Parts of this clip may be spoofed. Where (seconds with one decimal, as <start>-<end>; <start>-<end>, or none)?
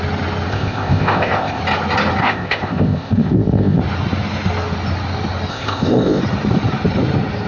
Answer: 0.5-1.6; 2.2-3.8; 5.5-6.2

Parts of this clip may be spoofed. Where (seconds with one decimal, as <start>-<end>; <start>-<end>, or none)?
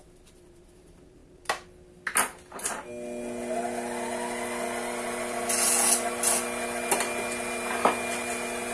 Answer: none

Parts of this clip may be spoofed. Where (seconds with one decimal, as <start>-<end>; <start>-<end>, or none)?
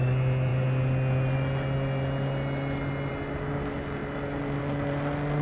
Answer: none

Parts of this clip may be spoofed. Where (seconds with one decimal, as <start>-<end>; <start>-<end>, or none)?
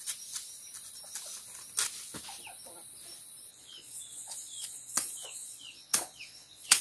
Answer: 3.5-6.8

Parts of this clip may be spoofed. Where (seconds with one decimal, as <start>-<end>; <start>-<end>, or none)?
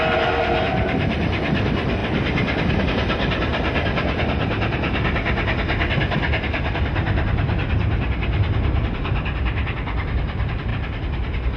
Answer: 0.0-2.0; 2.8-3.5; 6.7-7.6; 8.7-10.7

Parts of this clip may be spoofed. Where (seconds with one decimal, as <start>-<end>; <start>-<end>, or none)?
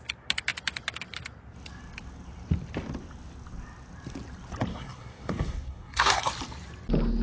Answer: 4.7-6.3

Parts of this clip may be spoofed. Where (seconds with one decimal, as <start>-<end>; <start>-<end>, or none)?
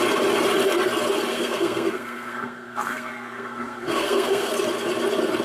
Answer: 1.3-4.5